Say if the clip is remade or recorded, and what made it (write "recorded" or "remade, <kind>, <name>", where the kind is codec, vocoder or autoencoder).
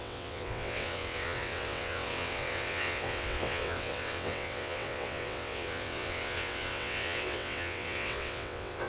remade, vocoder, WaveNeXt